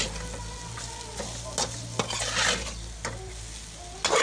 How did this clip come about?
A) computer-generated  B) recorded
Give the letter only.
B